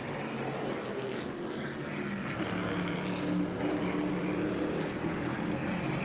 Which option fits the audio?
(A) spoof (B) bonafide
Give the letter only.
B